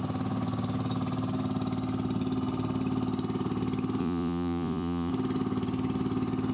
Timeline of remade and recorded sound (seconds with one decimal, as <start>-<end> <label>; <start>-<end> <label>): 0.0-4.0 recorded; 4.0-5.1 remade; 5.1-6.5 recorded